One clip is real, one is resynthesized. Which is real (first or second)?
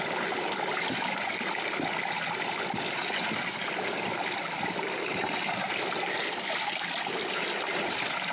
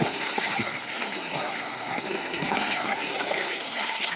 first